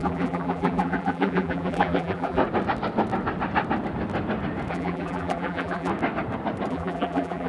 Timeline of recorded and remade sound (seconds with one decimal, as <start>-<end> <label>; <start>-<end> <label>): 0.0-2.4 remade; 2.4-4.7 recorded; 4.7-5.9 remade; 5.9-6.7 recorded; 6.7-7.5 remade